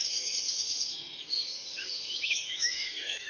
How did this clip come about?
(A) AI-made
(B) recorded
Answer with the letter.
A